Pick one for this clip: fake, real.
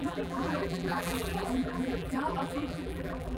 fake